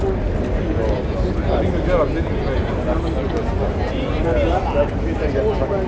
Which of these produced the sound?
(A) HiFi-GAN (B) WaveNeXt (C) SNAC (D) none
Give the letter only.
D